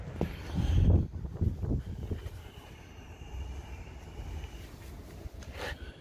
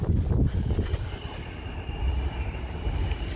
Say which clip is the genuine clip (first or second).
first